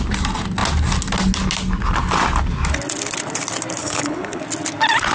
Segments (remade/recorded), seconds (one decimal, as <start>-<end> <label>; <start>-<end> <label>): 0.0-3.8 recorded; 3.8-4.4 remade; 4.4-5.1 recorded